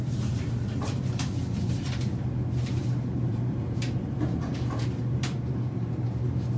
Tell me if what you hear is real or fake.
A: fake